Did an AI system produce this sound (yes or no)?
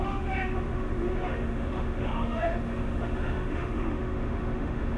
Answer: yes